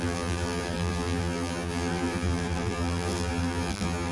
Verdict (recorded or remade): remade